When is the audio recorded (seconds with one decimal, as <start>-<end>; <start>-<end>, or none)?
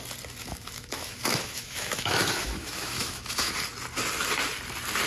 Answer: 0.0-0.4; 3.5-5.1